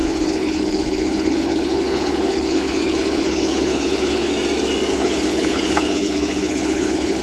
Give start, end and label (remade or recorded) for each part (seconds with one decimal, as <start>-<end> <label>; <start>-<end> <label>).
0.0-4.3 remade; 4.3-4.9 recorded; 4.9-7.2 remade